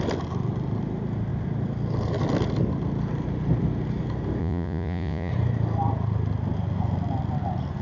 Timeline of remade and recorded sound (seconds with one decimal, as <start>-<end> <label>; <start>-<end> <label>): 0.0-4.4 recorded; 4.4-5.3 remade; 5.3-7.8 recorded